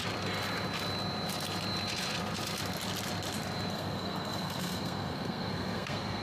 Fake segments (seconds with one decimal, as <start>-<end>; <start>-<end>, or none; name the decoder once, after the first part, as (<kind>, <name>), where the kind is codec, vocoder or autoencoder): 3.7-6.2 (codec, SNAC)